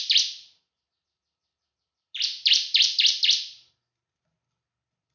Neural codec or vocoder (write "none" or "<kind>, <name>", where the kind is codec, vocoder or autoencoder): vocoder, BigVGAN v2